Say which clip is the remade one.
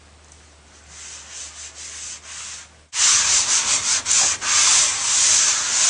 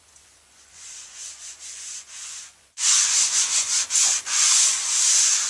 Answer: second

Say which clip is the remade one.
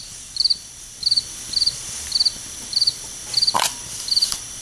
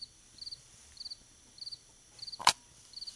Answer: first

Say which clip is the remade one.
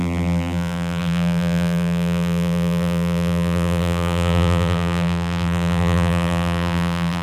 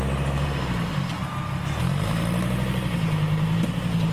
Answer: first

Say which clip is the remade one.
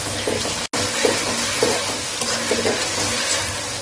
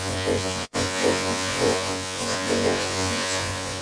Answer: second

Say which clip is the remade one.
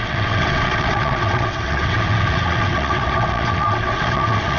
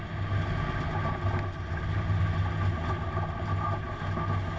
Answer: first